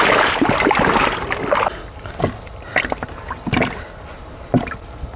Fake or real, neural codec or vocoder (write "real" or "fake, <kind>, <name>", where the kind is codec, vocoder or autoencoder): real